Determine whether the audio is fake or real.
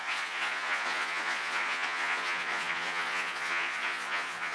fake